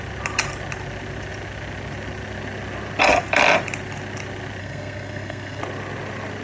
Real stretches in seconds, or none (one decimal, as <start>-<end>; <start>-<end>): 0.0-4.6; 5.6-6.4